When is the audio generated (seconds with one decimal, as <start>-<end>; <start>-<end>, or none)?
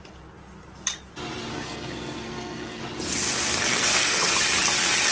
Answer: 1.5-2.8; 3.7-4.3